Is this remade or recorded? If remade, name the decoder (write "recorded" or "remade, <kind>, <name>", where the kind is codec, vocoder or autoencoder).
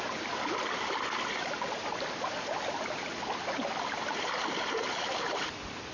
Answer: recorded